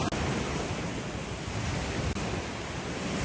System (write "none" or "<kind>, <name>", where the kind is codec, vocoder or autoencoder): none